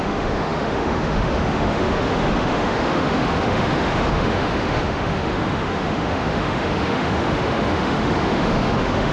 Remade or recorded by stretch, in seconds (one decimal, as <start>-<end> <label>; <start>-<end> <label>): 0.0-9.1 remade